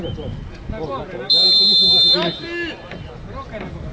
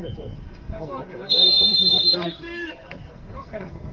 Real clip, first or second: first